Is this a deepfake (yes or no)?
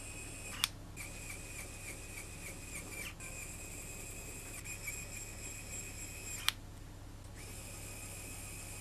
no